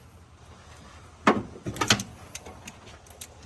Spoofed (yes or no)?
no